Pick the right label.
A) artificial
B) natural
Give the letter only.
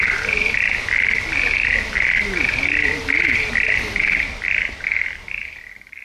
B